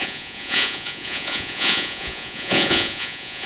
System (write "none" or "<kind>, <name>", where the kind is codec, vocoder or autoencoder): vocoder, Vocos